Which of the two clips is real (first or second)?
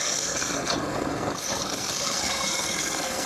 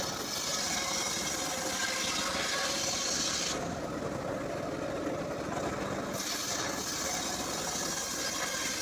second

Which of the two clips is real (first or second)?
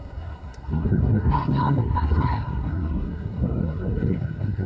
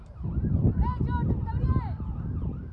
second